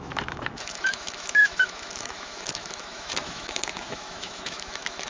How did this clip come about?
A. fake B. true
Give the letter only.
A